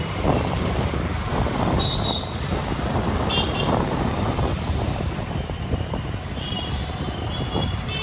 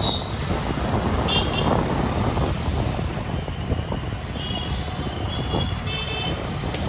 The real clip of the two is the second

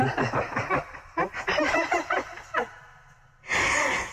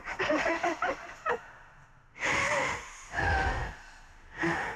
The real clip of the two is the first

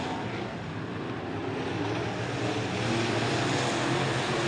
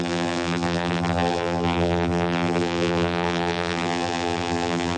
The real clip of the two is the first